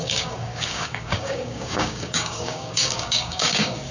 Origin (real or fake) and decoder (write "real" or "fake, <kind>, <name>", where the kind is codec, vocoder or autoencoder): fake, codec, DAC